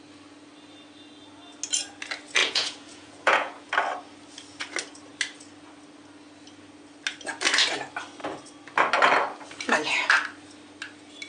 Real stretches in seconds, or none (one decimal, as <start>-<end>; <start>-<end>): 0.0-2.4; 3.7-11.3